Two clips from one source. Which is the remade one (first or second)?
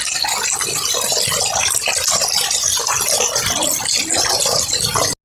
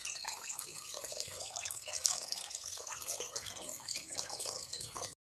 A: second